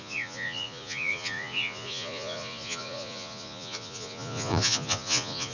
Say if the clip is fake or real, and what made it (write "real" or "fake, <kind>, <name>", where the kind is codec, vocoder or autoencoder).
fake, vocoder, Vocos